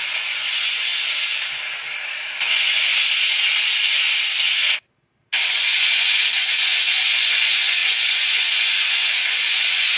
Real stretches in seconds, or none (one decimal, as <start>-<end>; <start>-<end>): 0.9-2.5; 2.9-5.5